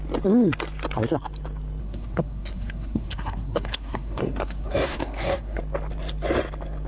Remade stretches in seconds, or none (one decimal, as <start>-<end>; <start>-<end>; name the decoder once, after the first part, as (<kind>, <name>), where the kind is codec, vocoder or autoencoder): 1.8-5.6 (codec, SNAC)

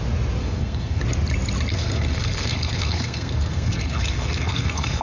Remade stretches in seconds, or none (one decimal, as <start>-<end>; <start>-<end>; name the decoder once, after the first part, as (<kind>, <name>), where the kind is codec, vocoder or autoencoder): 0.4-1.0 (codec, SNAC); 1.7-5.0

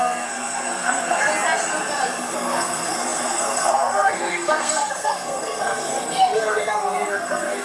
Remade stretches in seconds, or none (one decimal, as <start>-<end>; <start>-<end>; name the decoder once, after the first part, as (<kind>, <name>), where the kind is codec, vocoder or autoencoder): 0.0-1.3 (codec, SNAC); 2.3-7.6

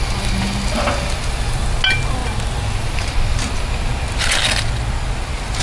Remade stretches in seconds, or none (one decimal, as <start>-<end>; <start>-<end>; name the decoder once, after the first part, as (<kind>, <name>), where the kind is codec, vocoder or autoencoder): none

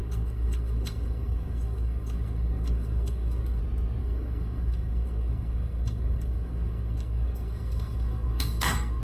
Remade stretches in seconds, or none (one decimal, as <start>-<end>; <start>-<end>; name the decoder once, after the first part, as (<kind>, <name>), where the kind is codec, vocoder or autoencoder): 0.0-3.6 (codec, SNAC); 4.0-9.0

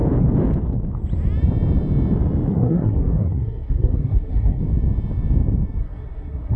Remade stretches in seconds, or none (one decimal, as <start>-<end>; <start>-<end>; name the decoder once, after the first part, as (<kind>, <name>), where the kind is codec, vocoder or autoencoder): 2.5-4.6 (codec, SNAC); 5.8-6.6

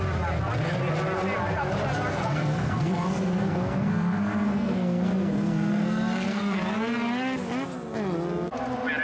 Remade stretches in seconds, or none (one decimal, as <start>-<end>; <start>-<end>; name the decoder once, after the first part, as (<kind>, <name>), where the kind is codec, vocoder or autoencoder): 2.1-6.6 (codec, SNAC)

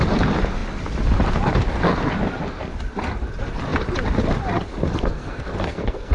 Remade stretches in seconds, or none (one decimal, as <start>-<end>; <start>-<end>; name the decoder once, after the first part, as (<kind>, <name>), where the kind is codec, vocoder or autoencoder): 4.9-6.1 (codec, SNAC)